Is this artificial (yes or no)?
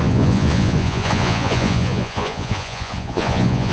yes